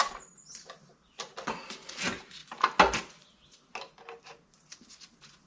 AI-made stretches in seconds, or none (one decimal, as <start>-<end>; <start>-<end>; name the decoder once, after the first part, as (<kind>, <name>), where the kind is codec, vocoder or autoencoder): none